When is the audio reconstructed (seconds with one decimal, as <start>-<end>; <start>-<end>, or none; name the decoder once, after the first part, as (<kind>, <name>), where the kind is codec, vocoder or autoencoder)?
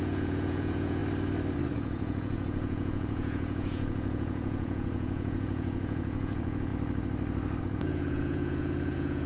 0.0-1.0 (vocoder, Vocos); 1.7-6.7; 7.6-9.3